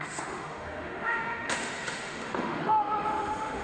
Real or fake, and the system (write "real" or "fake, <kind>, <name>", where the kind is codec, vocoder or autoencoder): fake, autoencoder, DAC-VAE